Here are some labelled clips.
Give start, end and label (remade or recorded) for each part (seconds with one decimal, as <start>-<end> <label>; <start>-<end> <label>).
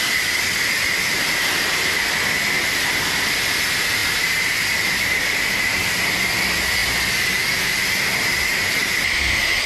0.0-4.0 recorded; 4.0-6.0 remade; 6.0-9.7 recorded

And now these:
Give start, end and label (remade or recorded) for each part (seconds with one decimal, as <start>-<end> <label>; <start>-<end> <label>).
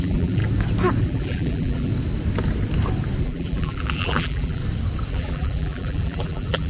0.0-0.4 remade; 0.4-1.0 recorded; 1.0-1.9 remade; 1.9-3.2 recorded; 3.2-4.6 remade; 4.6-5.1 recorded; 5.1-6.7 remade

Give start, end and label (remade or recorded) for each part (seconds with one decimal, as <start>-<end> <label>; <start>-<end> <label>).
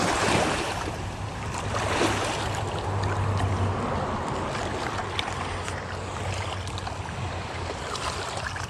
0.0-8.7 recorded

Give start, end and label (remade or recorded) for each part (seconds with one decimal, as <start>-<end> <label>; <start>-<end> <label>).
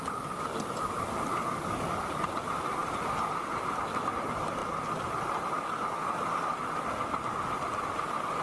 0.0-8.4 recorded